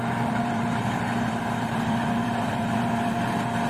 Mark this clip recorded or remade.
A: remade